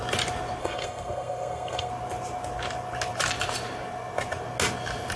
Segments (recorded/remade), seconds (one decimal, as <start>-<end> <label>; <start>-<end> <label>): 0.0-0.6 recorded; 0.6-1.9 remade; 1.9-5.2 recorded